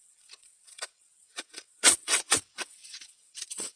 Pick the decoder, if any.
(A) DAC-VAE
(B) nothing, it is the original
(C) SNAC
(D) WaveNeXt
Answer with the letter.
D